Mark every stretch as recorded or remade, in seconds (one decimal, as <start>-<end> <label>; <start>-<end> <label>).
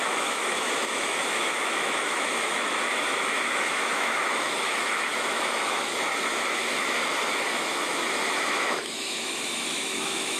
0.0-10.4 remade